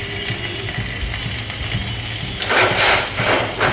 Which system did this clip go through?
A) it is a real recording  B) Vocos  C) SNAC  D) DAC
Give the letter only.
A